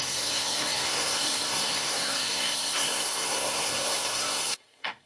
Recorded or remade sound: remade